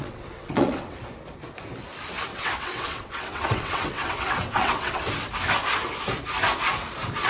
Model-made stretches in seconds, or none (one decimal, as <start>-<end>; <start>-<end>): 0.0-1.0; 2.3-5.1